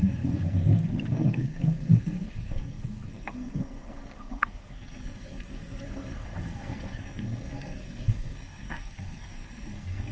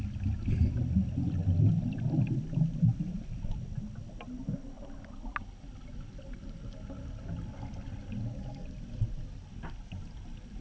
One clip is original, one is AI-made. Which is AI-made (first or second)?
first